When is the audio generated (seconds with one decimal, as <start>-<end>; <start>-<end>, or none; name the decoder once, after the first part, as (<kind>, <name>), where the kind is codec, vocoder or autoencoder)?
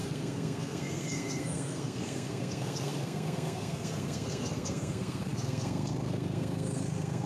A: 0.0-7.3 (codec, SNAC)